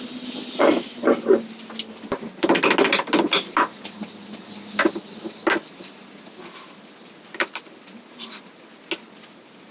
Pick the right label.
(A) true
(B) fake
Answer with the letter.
A